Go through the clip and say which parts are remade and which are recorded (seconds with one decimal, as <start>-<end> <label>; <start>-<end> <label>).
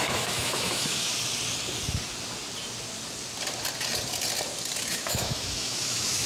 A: 0.0-1.1 remade; 1.1-4.9 recorded; 4.9-6.3 remade